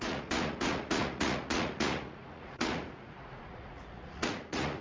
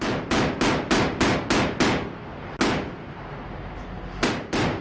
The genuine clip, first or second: second